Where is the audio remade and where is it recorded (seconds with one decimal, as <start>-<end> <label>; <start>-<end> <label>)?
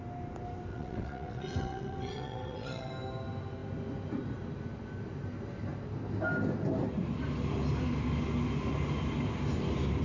0.0-0.7 recorded; 0.7-2.9 remade; 2.9-10.0 recorded